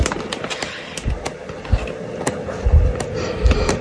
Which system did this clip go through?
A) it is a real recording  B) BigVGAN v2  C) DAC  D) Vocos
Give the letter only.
A